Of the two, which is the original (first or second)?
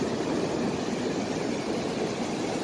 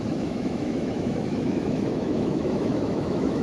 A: first